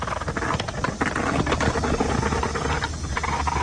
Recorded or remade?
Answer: recorded